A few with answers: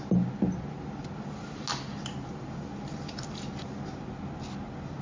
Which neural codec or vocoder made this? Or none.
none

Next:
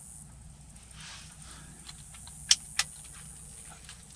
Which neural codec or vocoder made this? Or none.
none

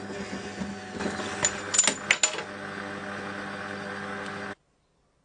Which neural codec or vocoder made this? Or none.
none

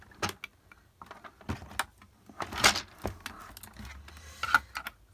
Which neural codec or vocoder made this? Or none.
none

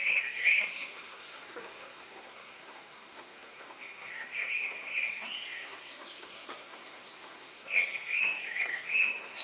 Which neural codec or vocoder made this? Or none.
codec, SNAC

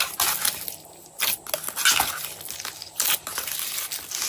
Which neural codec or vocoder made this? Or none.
none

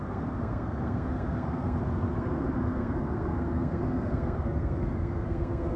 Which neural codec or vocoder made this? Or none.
codec, SNAC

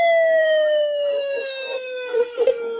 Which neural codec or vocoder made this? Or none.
codec, SNAC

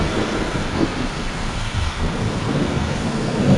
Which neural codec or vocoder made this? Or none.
codec, SNAC